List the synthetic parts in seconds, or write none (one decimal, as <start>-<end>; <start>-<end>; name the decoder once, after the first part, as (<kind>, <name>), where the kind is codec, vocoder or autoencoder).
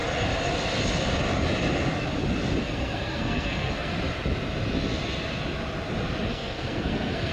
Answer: 2.6-3.9 (codec, SNAC); 6.3-7.3